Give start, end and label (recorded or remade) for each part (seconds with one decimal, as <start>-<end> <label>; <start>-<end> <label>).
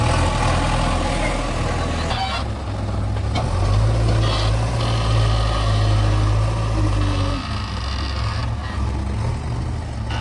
0.0-10.2 recorded